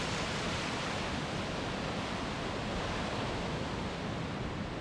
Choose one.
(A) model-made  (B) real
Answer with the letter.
B